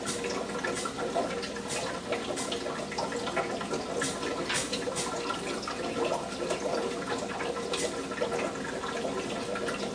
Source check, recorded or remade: recorded